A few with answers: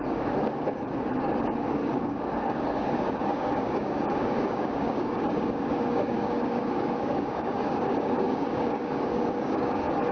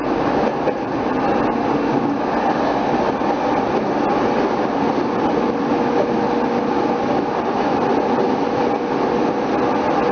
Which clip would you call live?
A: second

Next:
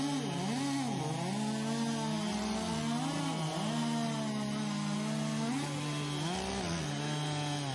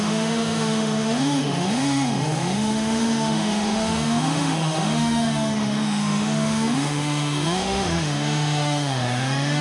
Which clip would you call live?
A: first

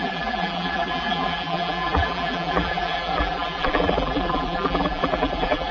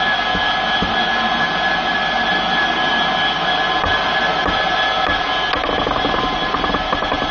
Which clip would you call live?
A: second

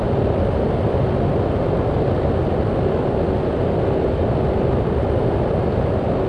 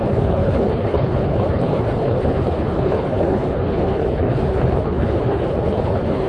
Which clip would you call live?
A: first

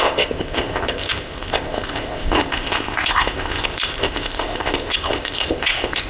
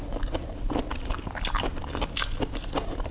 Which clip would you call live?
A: second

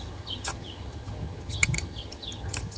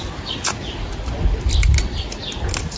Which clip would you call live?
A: second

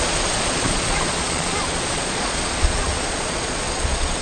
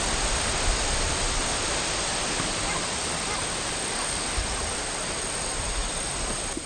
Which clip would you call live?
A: second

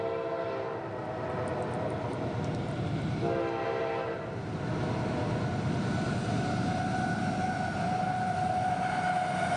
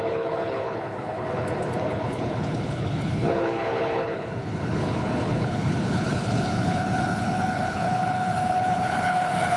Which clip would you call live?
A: first